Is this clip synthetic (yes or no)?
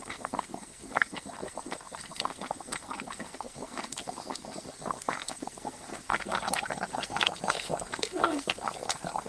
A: yes